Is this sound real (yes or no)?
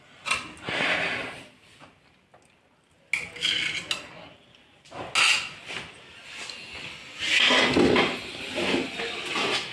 yes